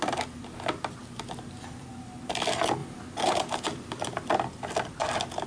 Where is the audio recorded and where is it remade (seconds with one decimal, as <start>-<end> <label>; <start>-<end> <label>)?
0.0-5.5 recorded